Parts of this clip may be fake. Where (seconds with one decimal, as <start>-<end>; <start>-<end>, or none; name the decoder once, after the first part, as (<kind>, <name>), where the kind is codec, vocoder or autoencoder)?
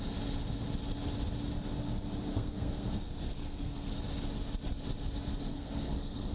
2.3-3.9 (codec, SNAC); 5.5-6.3